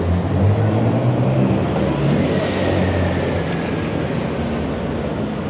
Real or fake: real